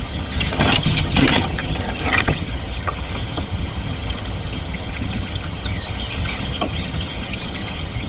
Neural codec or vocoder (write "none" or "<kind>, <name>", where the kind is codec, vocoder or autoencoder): vocoder, HiFi-GAN